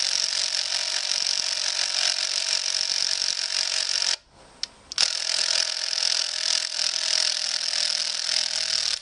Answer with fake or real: real